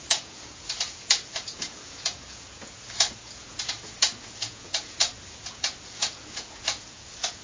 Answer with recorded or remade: remade